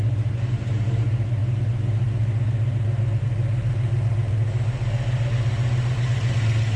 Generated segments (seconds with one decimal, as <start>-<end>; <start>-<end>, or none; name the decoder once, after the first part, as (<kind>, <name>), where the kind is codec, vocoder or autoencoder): none